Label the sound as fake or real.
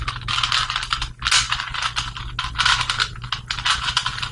real